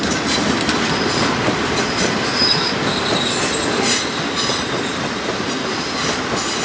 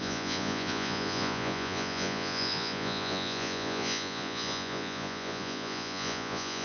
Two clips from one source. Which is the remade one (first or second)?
second